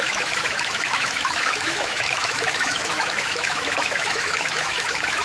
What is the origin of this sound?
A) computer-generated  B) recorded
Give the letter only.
A